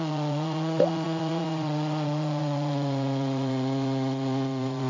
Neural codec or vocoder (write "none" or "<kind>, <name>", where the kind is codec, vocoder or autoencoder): vocoder, Vocos